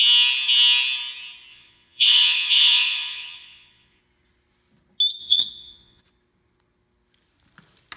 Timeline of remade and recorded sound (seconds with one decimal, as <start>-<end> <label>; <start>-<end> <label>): 0.0-1.5 recorded; 1.5-4.0 remade; 4.0-5.2 recorded; 5.2-6.0 remade; 6.0-8.0 recorded